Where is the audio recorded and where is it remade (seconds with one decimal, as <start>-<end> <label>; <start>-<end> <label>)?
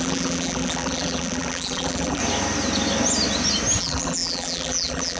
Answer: 0.0-2.2 remade; 2.2-3.8 recorded; 3.8-5.2 remade